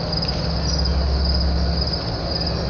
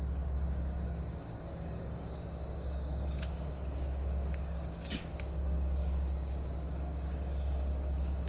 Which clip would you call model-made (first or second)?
second